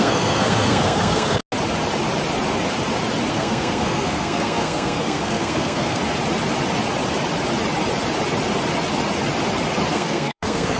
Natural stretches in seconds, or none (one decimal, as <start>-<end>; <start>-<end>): 1.4-3.3; 6.0-9.9